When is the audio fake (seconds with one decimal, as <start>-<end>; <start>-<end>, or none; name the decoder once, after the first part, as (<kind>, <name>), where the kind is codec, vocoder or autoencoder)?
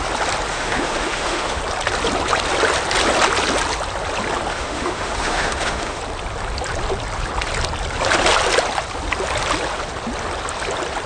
0.5-1.6 (autoencoder, DAC-VAE); 4.5-6.0